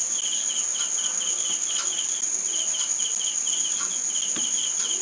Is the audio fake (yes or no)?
no